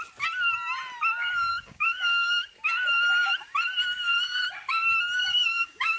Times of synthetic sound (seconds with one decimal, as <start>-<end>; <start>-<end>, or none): 1.5-2.4; 5.2-6.0